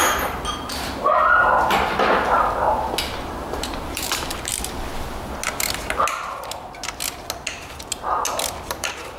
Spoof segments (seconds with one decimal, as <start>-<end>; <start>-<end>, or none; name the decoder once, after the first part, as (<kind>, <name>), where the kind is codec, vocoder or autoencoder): 0.0-1.4 (vocoder, BigVGAN v2); 3.3-4.5; 8.7-9.2